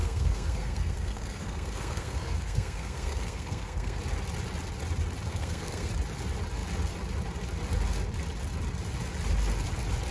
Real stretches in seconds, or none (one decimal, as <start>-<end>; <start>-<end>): 4.0-5.3; 5.9-10.1